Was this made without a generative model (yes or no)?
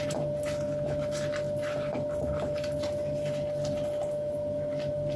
yes